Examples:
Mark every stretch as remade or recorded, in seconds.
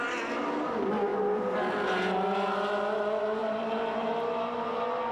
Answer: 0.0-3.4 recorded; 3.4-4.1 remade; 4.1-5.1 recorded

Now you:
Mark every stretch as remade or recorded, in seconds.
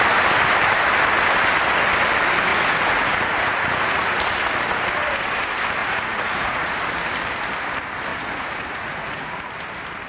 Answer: 0.0-2.5 recorded; 2.5-4.1 remade; 4.1-5.8 recorded; 5.8-6.8 remade; 6.8-8.1 recorded; 8.1-9.5 remade; 9.5-10.1 recorded